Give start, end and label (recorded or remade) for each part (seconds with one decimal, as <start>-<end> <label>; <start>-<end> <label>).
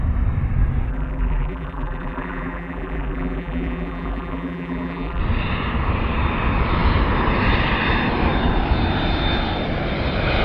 0.0-0.9 recorded; 0.9-5.2 remade; 5.2-10.4 recorded